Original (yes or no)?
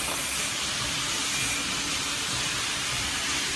yes